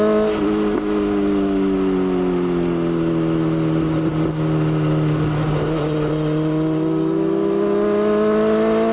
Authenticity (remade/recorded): recorded